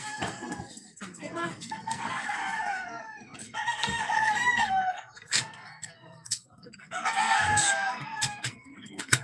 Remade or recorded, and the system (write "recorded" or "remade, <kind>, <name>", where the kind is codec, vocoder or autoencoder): remade, codec, SNAC